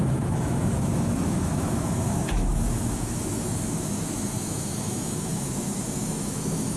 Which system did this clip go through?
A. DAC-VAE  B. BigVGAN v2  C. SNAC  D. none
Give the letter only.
A